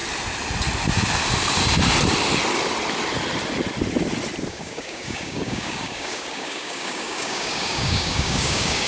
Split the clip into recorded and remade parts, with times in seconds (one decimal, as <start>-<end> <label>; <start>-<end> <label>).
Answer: 0.0-4.5 recorded; 4.5-8.9 remade